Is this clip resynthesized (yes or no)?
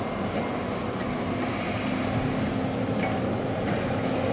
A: no